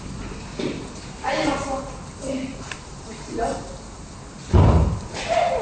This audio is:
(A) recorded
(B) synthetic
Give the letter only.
A